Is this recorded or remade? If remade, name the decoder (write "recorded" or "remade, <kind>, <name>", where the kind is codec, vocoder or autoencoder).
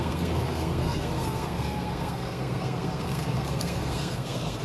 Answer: remade, codec, SNAC